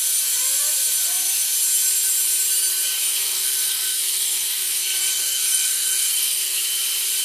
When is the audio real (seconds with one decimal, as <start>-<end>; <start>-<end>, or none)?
0.0-3.1; 6.6-7.2